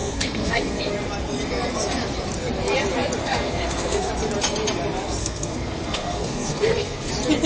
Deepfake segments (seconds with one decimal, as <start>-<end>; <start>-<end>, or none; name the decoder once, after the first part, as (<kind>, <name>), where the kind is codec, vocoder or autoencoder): 0.0-0.9 (codec, SNAC); 3.2-4.1; 5.2-7.1

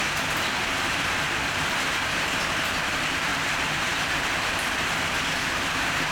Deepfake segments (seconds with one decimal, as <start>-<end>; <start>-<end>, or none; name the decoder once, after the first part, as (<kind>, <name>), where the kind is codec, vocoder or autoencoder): 0.0-6.1 (vocoder, BigVGAN v2)

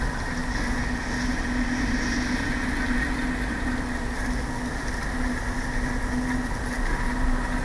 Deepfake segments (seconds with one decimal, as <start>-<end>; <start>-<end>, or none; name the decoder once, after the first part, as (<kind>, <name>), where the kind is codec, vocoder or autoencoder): none

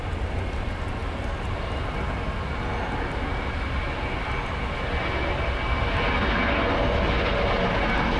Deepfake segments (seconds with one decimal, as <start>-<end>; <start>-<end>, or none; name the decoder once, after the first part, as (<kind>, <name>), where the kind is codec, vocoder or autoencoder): none

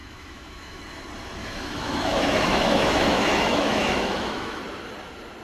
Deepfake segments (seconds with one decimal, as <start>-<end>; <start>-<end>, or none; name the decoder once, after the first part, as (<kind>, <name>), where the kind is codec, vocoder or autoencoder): 0.0-0.8 (autoencoder, DAC-VAE); 1.4-4.6

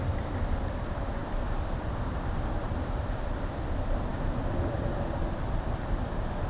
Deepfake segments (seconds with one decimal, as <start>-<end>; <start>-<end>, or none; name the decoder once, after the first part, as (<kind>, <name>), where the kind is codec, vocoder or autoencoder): 0.0-4.1 (vocoder, BigVGAN v2); 5.2-6.5

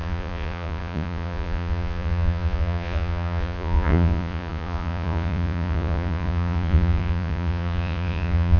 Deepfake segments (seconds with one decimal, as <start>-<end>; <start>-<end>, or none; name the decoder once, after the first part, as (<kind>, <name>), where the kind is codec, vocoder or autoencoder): 0.0-8.6 (vocoder, Vocos)